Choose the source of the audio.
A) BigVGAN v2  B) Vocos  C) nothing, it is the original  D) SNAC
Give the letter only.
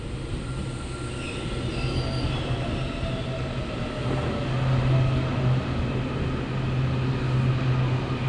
C